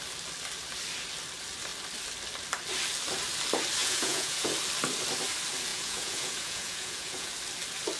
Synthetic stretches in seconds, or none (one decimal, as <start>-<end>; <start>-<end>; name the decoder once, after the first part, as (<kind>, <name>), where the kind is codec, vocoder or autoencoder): 3.8-4.5 (vocoder, Vocos); 5.7-7.3